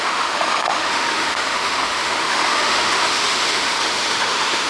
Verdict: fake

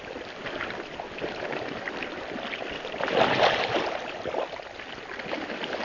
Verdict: real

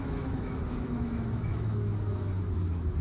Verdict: fake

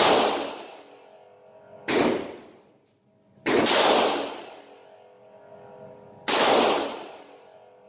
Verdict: real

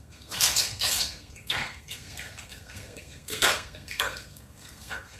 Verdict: fake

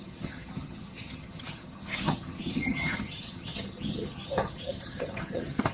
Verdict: fake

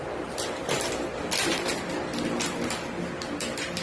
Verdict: fake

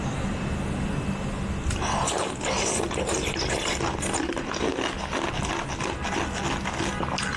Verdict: real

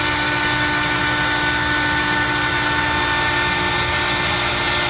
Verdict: real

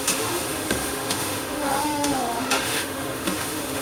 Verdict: fake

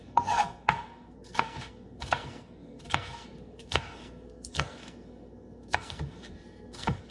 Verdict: fake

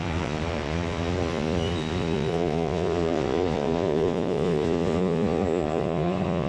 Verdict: fake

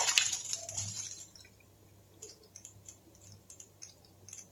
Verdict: fake